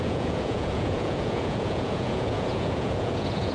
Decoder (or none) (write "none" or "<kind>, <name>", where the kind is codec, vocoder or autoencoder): vocoder, Vocos